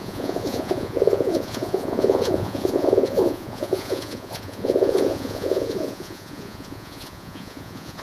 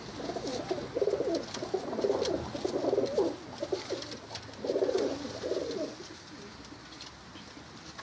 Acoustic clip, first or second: second